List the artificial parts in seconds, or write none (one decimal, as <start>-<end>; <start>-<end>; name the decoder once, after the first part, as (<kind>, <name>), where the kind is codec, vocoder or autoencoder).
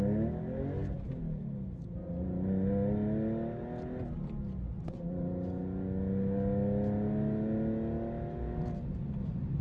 none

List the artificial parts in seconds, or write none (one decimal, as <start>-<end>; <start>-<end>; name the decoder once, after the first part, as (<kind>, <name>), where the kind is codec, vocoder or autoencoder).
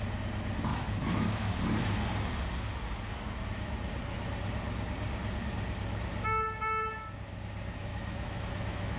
0.7-1.5 (autoencoder, DAC-VAE); 7.9-9.0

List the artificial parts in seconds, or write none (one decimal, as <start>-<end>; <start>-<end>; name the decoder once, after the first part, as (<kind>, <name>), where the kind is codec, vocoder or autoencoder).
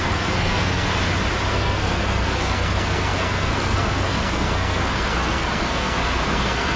0.0-0.9 (codec, SNAC); 1.5-6.8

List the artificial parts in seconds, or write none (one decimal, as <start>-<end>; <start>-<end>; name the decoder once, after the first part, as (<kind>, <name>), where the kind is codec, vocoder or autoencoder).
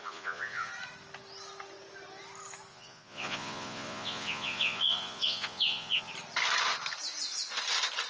0.0-0.7 (vocoder, Vocos); 2.7-6.1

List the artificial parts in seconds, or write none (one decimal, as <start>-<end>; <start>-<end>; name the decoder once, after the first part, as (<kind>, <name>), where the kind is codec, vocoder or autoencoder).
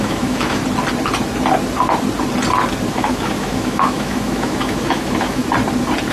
0.0-0.6 (autoencoder, DAC-VAE); 2.9-5.4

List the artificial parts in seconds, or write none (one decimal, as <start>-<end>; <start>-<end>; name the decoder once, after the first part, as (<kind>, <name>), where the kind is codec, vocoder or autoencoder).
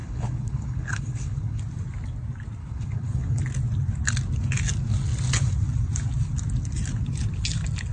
0.0-1.6 (codec, HILCodec); 2.6-3.4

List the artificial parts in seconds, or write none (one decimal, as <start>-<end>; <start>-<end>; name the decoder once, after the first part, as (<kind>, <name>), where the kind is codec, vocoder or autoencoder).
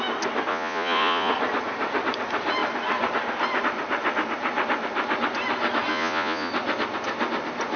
0.5-1.3 (vocoder, Vocos); 5.9-6.5